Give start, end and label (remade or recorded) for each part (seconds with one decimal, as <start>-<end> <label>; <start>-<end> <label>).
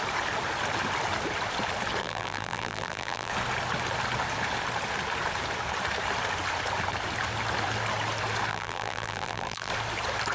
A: 0.0-2.0 recorded; 2.0-3.3 remade; 3.3-8.5 recorded; 8.5-9.7 remade; 9.7-10.3 recorded